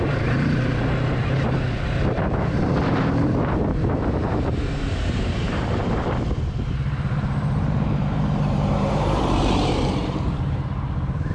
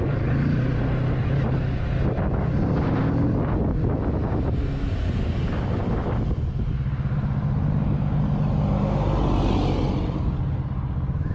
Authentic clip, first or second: second